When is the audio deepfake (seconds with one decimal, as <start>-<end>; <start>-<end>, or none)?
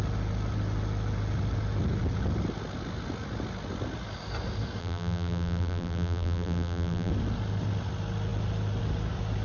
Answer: 4.8-7.1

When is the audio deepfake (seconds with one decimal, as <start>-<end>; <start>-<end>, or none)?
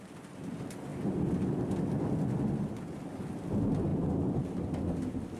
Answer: 3.9-4.8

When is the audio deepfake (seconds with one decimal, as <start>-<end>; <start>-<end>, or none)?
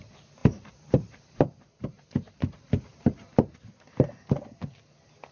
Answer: 0.4-3.6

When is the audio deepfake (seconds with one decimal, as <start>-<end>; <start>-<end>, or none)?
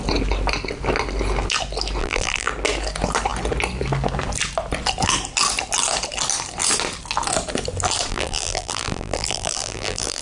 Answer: 2.0-2.5; 8.1-10.2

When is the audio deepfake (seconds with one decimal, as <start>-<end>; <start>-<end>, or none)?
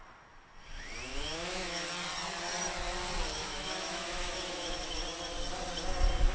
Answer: 1.1-1.9; 3.4-5.0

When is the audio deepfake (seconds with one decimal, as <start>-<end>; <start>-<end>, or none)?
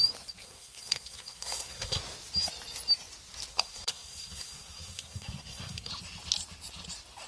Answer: 0.4-2.0; 3.5-5.9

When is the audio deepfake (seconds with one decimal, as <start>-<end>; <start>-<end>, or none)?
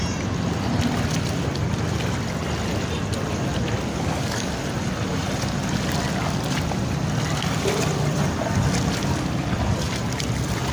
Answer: 3.9-4.5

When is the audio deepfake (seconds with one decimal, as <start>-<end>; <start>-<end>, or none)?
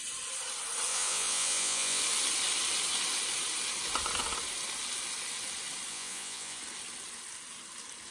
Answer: 0.9-2.0; 5.9-6.6